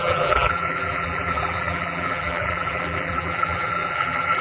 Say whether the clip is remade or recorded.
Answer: remade